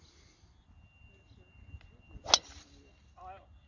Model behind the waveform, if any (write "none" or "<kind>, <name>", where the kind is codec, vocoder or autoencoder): none